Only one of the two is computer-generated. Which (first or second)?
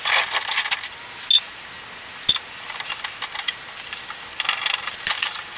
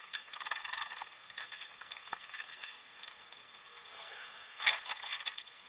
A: second